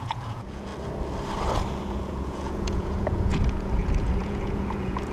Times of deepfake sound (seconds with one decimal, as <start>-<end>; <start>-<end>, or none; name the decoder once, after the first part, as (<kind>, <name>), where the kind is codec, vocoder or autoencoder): 0.0-0.7 (vocoder, Vocos); 1.8-5.1